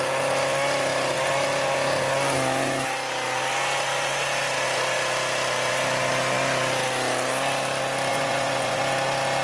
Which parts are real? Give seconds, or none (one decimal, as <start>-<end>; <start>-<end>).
0.0-8.1; 8.8-9.4